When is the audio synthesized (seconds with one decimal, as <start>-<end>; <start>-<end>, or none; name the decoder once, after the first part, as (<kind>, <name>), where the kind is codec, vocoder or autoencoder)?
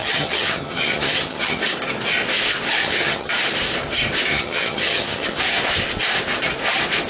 0.0-1.6 (vocoder, HiFi-GAN); 2.8-3.3; 4.3-5.4